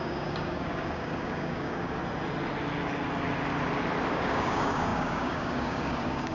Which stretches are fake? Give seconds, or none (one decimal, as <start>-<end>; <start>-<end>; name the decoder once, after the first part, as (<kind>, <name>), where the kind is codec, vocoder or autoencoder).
0.0-2.0 (codec, DAC); 4.1-6.3